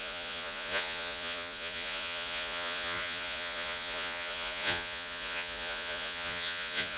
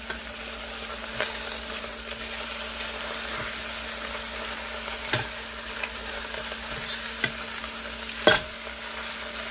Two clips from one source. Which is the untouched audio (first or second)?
second